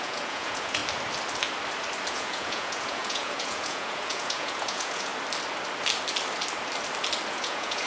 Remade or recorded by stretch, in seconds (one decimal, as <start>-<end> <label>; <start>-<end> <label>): 0.0-0.8 remade; 0.8-2.1 recorded; 2.1-5.1 remade; 5.1-7.3 recorded; 7.3-7.9 remade